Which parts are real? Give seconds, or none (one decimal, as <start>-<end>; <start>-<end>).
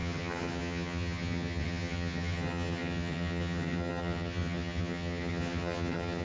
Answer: none